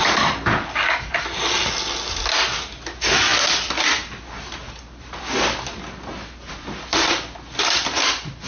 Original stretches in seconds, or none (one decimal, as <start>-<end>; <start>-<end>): 0.0-8.5